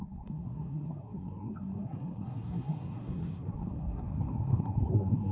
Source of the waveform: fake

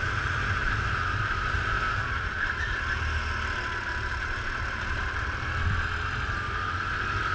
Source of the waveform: real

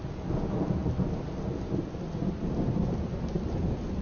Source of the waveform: real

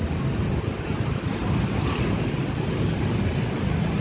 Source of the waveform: real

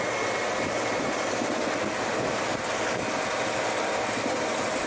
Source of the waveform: real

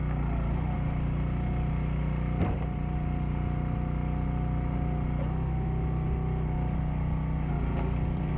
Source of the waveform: real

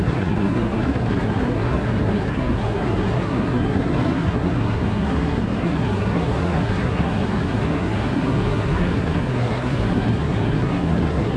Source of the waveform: fake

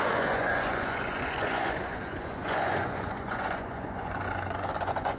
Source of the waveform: fake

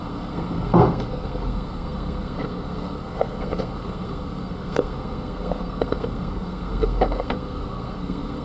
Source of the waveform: fake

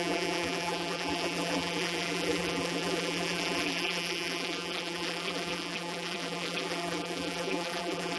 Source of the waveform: fake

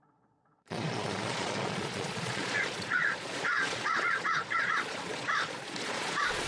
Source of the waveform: fake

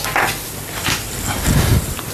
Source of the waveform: real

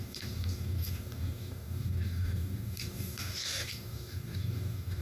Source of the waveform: fake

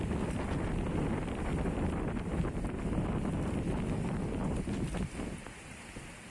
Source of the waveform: real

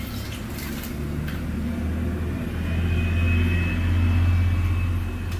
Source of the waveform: real